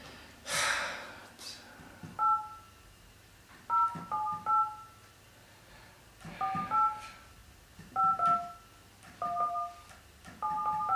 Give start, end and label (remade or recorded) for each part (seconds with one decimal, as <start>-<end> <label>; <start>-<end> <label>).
0.0-11.0 recorded